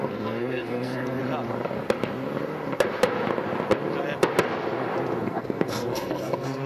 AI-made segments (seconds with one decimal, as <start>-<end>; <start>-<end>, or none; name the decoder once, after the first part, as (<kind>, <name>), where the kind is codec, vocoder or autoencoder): 0.0-1.2 (codec, SNAC); 5.2-6.7